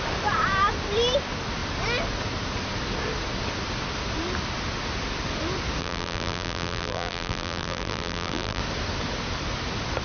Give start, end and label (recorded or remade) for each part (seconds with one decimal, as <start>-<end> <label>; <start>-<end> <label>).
0.0-5.8 recorded; 5.8-8.6 remade; 8.6-10.0 recorded